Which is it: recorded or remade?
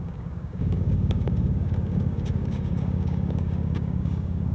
remade